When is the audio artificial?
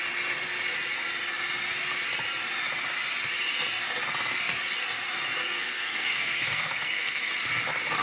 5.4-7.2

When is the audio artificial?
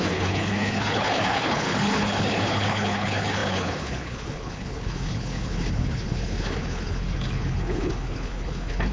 0.0-8.9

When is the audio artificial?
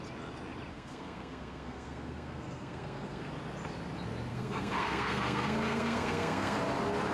0.7-3.3; 4.3-6.6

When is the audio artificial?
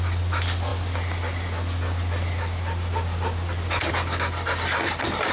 none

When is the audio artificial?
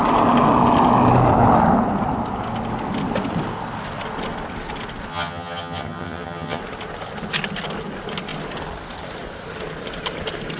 5.1-6.6